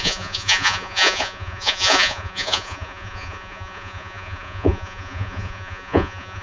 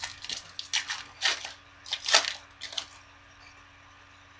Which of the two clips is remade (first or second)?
first